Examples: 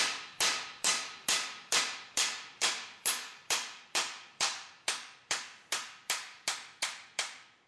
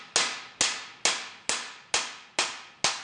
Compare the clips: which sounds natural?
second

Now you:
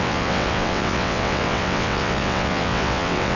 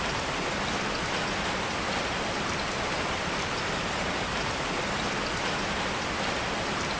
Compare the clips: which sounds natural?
second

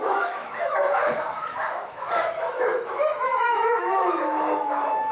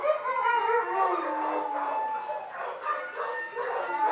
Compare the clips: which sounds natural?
second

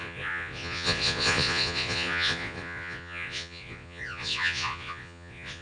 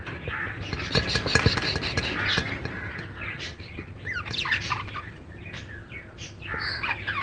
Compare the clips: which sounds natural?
second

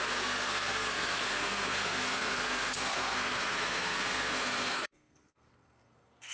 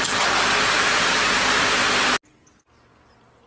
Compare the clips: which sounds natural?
second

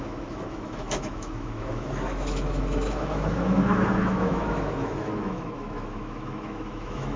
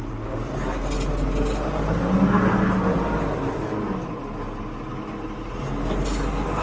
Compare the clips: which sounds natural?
second